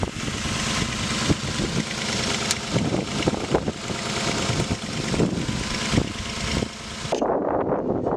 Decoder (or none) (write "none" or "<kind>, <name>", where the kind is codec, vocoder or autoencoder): none